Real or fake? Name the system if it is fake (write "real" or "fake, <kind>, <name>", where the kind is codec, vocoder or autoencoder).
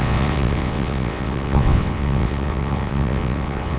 fake, vocoder, WaveNeXt